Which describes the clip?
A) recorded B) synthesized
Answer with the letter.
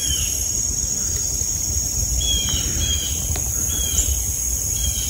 A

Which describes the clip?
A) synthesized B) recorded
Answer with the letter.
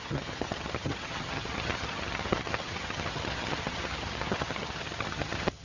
A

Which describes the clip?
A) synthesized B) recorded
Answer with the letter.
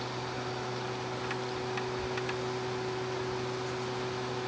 B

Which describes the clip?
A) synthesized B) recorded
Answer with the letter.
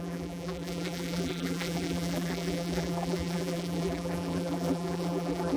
A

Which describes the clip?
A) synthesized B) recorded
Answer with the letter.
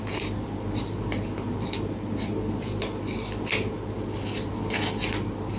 B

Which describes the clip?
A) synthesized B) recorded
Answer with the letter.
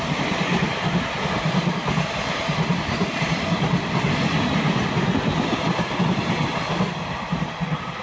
B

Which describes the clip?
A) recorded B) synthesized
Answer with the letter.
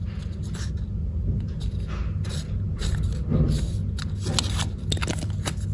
A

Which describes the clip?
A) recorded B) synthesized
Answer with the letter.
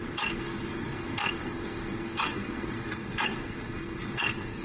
B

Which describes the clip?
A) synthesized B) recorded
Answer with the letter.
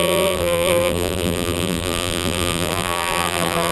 A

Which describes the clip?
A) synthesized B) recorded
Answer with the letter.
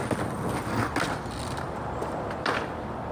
B